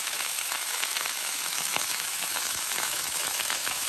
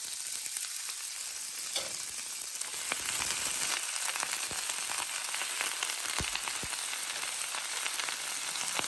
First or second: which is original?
second